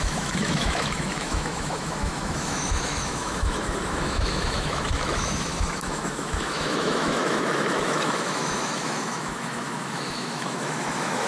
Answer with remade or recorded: remade